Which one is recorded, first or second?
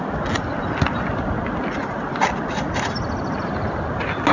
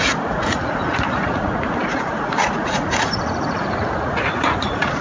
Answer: first